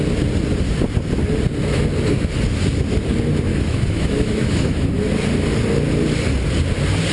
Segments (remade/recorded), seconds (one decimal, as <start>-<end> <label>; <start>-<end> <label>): 0.0-3.5 recorded; 3.5-4.9 remade; 4.9-7.1 recorded